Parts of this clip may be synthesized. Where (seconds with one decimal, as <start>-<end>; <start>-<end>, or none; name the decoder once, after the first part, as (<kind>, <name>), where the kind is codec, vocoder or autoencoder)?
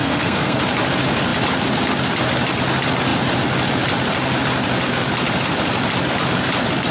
0.0-0.6 (codec, SNAC)